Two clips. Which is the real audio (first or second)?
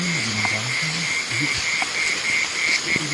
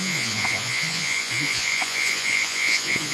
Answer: first